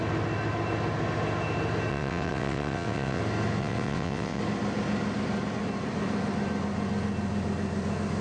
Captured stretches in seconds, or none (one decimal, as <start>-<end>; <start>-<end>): 0.0-1.9; 3.2-3.6; 4.4-8.2